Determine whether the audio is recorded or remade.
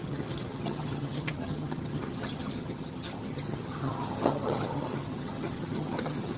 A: remade